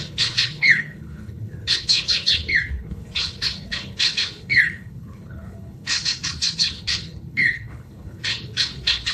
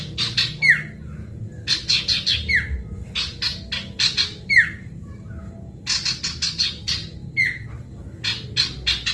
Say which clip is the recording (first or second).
second